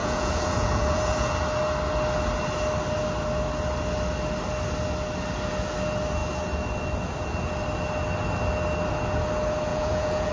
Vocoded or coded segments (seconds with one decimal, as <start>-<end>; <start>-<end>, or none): 0.0-1.3; 9.7-10.3